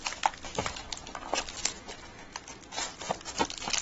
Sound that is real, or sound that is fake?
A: real